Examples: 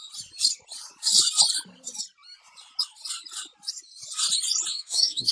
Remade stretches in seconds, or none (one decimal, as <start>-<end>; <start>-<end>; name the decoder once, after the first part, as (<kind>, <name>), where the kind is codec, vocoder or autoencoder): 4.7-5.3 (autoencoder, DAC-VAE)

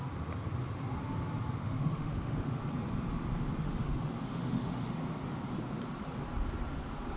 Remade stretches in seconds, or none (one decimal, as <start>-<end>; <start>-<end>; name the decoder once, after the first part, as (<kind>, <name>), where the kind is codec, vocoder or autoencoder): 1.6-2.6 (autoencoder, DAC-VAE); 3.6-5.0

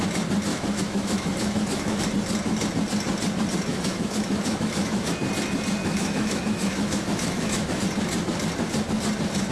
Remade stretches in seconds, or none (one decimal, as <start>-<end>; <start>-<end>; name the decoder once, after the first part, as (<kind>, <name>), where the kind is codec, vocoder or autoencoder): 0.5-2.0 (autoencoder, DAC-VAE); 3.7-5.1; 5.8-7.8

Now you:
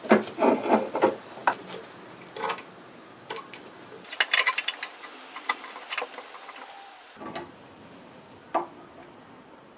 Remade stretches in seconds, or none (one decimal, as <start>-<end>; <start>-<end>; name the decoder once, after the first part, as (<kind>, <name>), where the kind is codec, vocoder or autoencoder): none

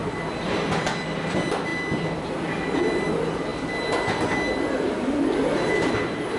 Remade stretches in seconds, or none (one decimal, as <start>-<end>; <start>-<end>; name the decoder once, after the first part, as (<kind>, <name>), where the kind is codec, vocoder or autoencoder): none